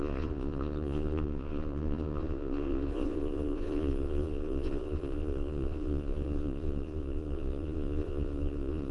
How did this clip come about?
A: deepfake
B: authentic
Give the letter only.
A